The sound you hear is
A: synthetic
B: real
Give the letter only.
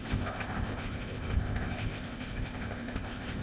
A